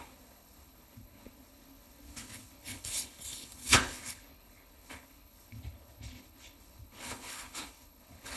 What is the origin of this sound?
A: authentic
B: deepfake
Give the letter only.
B